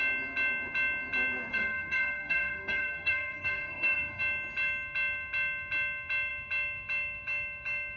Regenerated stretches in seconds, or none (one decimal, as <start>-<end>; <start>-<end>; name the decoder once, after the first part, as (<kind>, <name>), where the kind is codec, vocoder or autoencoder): 1.5-4.2 (codec, SNAC)